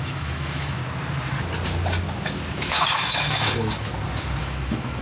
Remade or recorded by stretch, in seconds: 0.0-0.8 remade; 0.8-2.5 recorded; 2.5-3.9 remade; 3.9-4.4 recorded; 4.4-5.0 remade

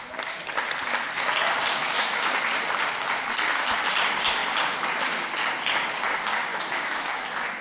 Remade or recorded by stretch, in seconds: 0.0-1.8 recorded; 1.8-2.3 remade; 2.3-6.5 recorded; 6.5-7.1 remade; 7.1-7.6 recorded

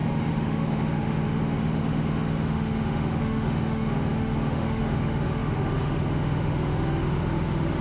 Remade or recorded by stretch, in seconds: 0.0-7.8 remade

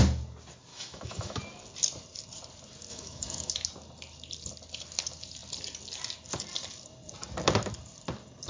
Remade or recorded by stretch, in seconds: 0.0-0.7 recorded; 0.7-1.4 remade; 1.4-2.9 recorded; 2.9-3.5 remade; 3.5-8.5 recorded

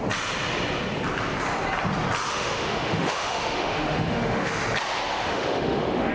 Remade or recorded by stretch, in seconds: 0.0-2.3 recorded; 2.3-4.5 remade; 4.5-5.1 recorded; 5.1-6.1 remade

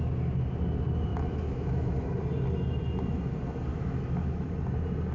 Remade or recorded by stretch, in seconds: 0.0-1.1 recorded; 1.1-2.2 remade; 2.2-3.7 recorded; 3.7-4.5 remade; 4.5-5.1 recorded

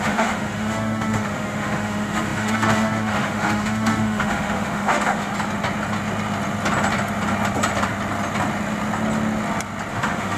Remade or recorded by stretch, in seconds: 0.0-5.3 remade; 5.3-9.9 recorded; 9.9-10.4 remade

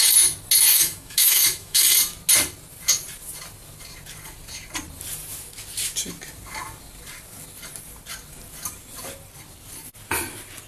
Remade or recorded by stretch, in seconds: 0.0-0.7 recorded; 0.7-1.8 remade; 1.8-10.7 recorded